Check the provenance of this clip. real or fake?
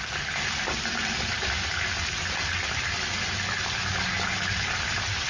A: real